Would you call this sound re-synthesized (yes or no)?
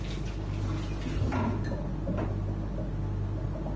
no